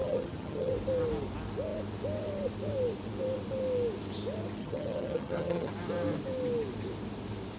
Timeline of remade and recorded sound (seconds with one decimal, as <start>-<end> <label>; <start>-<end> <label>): 0.0-0.7 remade; 0.7-4.6 recorded; 4.6-5.7 remade; 5.7-7.6 recorded